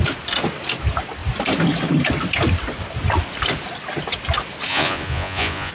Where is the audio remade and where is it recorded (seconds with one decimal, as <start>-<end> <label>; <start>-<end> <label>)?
0.0-4.7 recorded; 4.7-5.7 remade